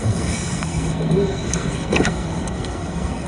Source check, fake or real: fake